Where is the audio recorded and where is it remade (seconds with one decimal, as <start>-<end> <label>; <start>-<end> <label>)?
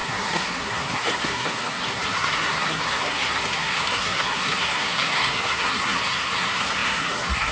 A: 0.0-7.5 remade